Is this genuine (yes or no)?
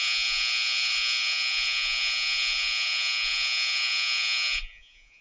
no